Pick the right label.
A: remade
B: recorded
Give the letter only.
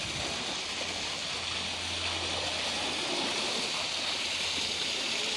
B